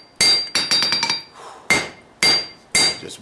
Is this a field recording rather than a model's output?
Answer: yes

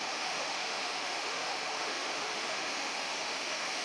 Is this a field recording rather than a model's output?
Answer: no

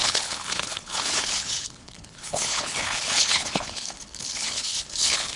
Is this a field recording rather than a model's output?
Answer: no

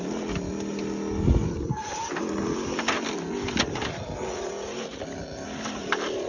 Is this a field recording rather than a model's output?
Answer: yes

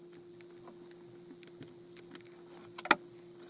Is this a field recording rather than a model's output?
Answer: yes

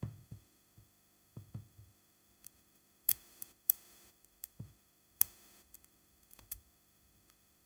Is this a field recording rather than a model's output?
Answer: no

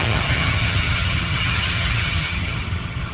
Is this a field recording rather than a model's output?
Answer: no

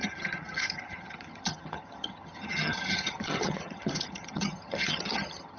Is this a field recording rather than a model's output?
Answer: no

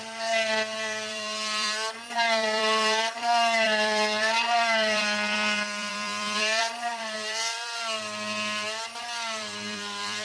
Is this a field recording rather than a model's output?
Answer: no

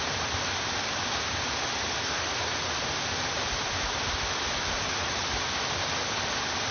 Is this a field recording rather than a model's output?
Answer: yes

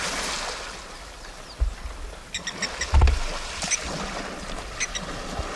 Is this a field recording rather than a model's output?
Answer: yes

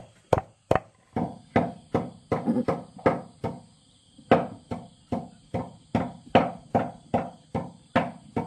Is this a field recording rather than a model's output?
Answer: yes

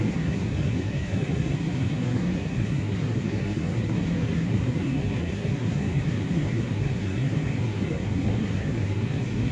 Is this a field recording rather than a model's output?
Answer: no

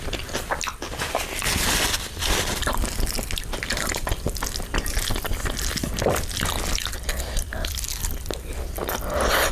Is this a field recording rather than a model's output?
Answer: yes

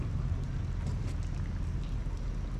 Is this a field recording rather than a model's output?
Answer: yes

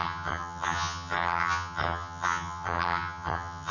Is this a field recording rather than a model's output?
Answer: no